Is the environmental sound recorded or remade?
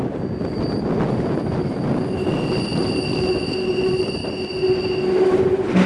recorded